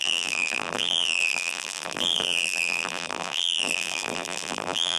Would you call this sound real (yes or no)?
no